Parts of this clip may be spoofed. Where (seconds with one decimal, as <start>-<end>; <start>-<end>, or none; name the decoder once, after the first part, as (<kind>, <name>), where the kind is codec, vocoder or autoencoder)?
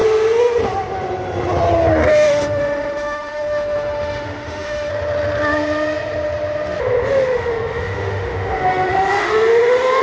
2.1-4.9 (autoencoder, DAC-VAE); 7.1-9.3